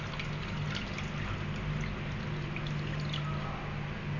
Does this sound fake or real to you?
real